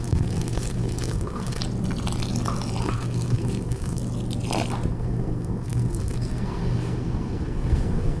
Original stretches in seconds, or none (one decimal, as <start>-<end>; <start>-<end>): 1.6-2.8; 4.0-4.9